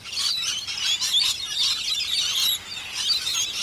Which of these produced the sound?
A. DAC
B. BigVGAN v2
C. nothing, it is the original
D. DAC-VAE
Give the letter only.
C